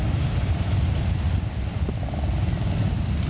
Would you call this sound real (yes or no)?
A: yes